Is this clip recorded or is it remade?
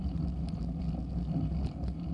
recorded